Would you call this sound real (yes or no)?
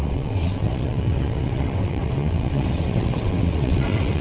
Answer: no